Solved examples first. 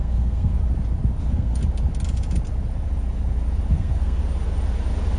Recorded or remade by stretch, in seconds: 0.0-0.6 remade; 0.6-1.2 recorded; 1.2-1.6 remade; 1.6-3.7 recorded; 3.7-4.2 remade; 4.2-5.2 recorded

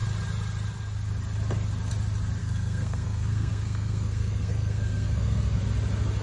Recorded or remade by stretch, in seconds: 0.0-2.4 recorded; 2.4-5.6 remade; 5.6-6.2 recorded

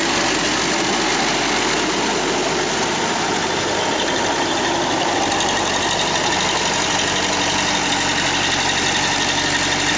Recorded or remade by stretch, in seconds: 0.0-10.0 recorded

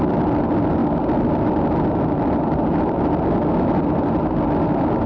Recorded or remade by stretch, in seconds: 0.0-5.1 recorded

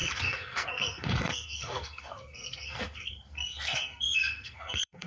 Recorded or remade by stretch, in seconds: 0.0-5.1 remade

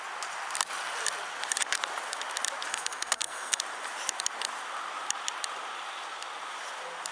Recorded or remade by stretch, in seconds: 0.0-2.7 recorded; 2.7-3.6 remade; 3.6-7.1 recorded

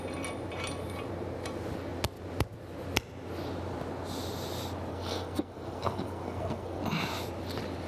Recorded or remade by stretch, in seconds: 0.0-4.9 recorded; 4.9-6.8 remade; 6.8-7.9 recorded